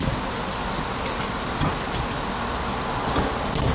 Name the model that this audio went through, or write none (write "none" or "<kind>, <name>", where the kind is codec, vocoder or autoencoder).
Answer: none